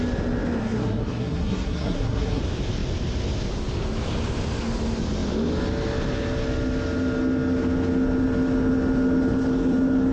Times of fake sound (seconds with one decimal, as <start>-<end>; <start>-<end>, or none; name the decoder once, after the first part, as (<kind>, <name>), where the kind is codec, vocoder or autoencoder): 0.6-2.4 (codec, SNAC)